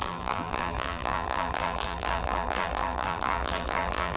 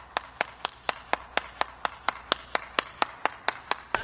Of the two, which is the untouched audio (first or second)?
second